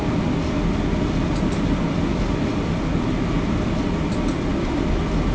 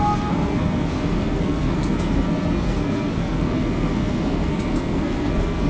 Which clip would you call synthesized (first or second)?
second